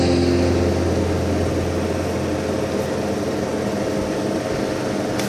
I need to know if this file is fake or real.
real